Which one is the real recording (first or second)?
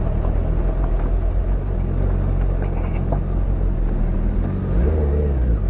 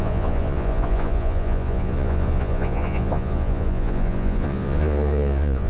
first